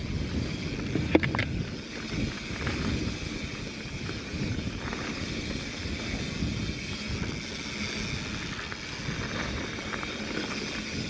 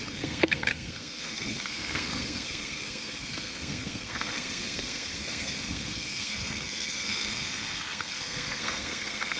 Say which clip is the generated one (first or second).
second